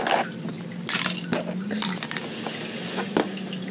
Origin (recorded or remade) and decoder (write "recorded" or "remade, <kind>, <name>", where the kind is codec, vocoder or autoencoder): recorded